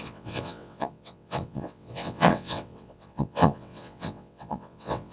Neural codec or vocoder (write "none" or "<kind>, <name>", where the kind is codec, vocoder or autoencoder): vocoder, WaveNeXt